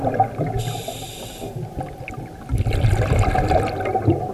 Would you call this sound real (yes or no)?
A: yes